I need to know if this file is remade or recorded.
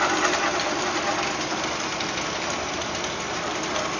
recorded